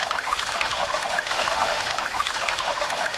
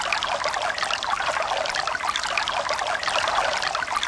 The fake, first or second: first